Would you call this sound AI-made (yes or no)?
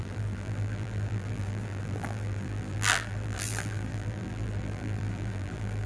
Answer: yes